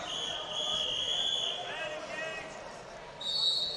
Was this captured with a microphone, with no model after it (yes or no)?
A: yes